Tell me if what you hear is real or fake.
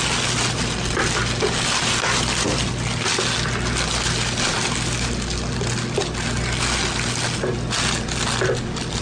real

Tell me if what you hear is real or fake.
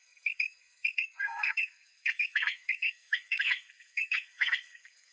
fake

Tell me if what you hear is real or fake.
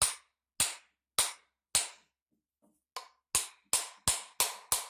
real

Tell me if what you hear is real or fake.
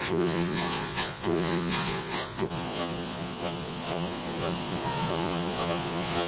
fake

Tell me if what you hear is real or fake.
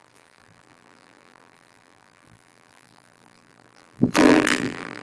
fake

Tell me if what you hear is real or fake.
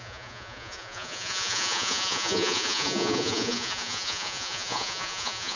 fake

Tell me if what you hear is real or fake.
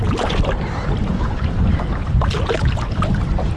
real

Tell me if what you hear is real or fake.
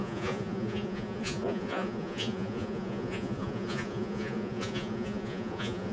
fake